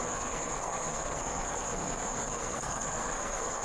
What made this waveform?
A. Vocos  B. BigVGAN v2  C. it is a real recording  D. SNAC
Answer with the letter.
D